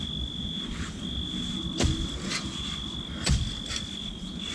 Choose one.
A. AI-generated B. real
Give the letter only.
B